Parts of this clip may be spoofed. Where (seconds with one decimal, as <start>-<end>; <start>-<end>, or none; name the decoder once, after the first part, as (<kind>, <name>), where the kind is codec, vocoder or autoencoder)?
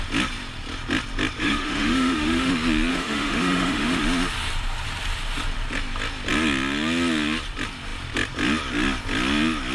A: 1.4-2.5 (autoencoder, DAC-VAE); 2.9-4.0